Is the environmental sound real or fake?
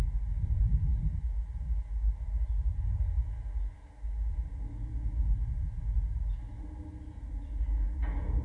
real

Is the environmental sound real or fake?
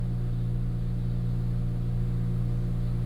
real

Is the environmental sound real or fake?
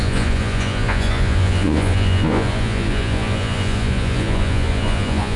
fake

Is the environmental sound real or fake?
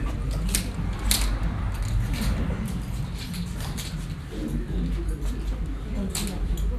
real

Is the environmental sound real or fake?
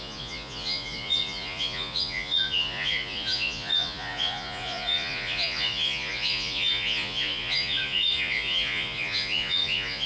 fake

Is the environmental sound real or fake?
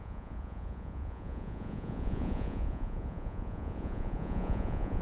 fake